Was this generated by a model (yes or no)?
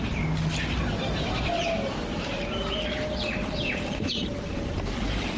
no